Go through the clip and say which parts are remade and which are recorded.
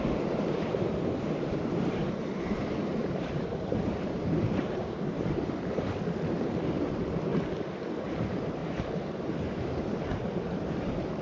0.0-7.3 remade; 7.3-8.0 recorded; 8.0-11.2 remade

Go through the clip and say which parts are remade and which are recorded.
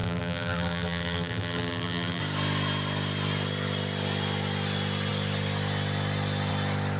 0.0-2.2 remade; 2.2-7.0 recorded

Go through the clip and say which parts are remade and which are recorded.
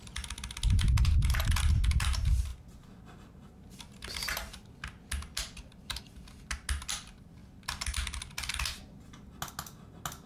0.0-10.3 recorded